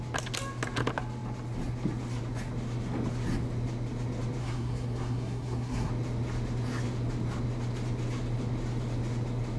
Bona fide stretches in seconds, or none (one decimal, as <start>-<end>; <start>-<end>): 0.0-4.4; 5.9-9.6